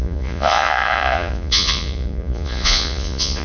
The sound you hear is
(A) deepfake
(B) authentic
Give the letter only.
A